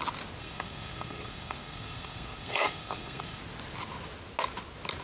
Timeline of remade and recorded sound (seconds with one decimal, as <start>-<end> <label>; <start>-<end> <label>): 0.0-0.4 recorded; 0.4-3.4 remade; 3.4-5.0 recorded